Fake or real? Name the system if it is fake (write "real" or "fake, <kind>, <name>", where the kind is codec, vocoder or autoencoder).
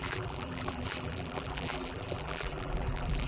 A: fake, vocoder, BigVGAN v2